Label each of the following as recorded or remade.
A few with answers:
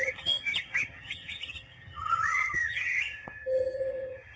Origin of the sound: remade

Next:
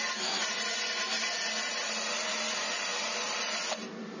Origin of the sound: recorded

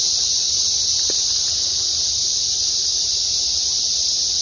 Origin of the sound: recorded